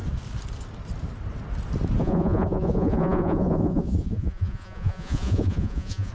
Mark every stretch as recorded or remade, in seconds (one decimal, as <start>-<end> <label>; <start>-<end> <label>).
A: 0.0-2.0 recorded; 2.0-6.1 remade